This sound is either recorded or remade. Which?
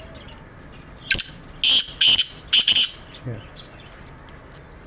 recorded